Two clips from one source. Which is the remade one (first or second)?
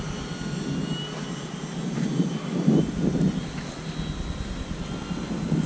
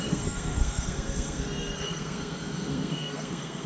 second